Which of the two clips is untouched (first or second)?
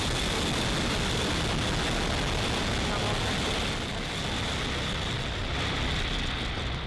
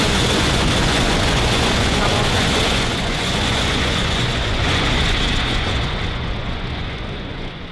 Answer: first